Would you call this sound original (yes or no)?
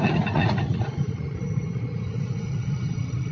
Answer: no